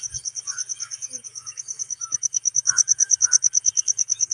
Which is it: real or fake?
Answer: fake